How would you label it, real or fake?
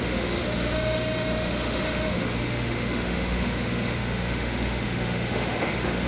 fake